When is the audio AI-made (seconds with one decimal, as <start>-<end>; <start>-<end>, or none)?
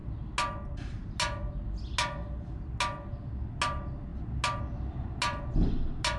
none